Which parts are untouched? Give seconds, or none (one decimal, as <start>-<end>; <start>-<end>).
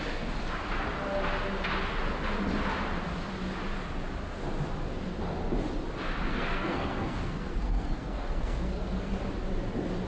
0.0-6.3; 9.2-10.1